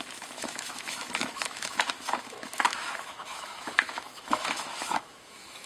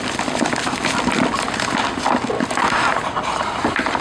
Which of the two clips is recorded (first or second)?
second